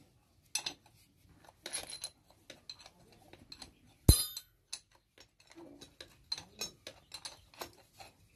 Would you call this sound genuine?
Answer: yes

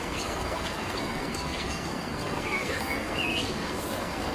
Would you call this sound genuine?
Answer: no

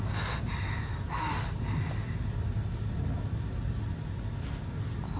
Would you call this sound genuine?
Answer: yes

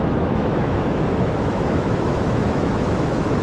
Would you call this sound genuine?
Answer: no